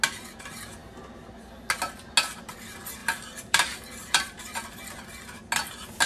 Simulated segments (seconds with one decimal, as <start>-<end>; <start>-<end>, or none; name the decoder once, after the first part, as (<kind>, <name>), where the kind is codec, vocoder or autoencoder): 3.0-4.7 (vocoder, BigVGAN v2)